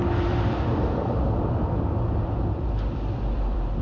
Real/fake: fake